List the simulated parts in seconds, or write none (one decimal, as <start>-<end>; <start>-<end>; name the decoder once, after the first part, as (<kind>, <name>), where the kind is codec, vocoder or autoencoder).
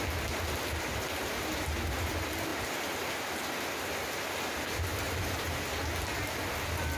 4.9-5.6 (vocoder, BigVGAN v2)